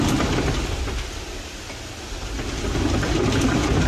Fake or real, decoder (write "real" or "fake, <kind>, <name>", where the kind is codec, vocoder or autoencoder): real